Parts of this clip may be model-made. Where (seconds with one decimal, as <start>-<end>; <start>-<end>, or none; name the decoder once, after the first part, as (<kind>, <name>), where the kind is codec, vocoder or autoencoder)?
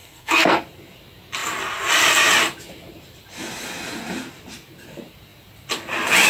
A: 0.0-0.6 (codec, SNAC)